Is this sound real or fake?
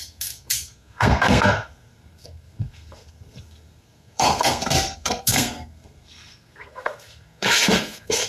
fake